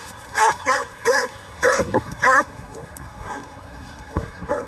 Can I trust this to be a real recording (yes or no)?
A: no